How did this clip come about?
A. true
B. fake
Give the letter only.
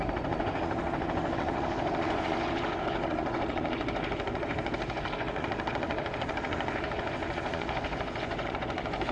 B